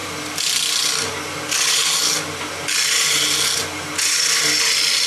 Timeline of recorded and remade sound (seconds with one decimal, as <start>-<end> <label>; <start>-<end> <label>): 0.0-5.1 recorded